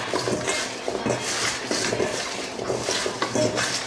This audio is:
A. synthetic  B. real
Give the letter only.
B